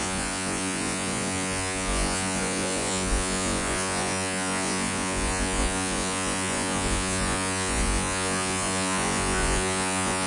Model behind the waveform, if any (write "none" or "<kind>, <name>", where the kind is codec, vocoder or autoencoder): vocoder, Vocos